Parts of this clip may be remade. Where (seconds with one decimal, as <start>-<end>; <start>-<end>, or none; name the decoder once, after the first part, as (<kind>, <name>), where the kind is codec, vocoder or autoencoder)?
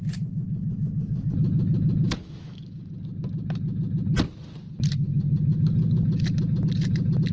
0.7-2.9 (autoencoder, DAC-VAE)